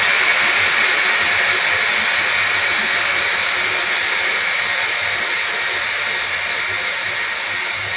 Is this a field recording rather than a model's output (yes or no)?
yes